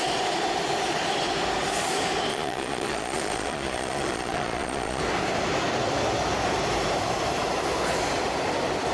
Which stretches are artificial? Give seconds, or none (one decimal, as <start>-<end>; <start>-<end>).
2.3-5.0